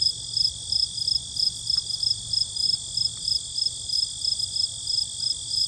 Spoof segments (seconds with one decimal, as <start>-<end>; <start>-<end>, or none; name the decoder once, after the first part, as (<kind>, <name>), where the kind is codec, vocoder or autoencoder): none